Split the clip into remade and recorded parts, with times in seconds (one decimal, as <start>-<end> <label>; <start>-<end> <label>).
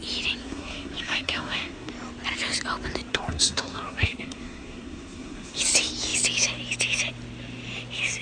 0.0-0.4 recorded; 0.4-1.9 remade; 1.9-3.1 recorded; 3.1-5.6 remade; 5.6-8.2 recorded